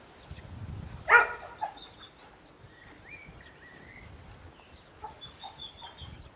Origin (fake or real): real